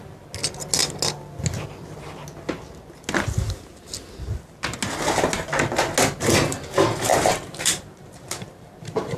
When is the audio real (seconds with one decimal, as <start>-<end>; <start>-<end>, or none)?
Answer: 0.0-7.1